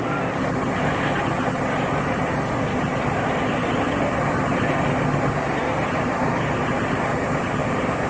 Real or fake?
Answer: real